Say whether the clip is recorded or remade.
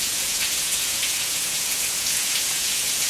remade